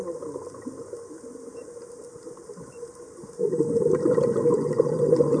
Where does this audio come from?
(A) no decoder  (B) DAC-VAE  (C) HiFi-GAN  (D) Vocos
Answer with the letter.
A